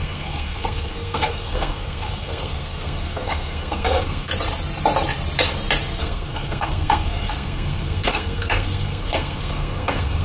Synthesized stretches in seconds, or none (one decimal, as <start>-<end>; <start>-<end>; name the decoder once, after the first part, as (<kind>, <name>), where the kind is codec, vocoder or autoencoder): 0.0-4.3 (codec, SNAC); 6.0-10.2